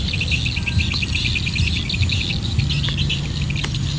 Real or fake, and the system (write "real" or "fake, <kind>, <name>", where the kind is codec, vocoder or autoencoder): real